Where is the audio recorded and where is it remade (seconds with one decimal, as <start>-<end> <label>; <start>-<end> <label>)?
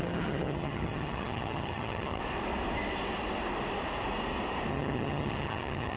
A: 0.0-2.2 remade; 2.2-4.7 recorded; 4.7-6.0 remade